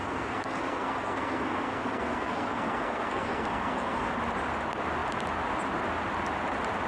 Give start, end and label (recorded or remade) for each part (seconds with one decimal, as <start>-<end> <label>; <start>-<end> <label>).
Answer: 0.0-4.1 remade; 4.1-6.9 recorded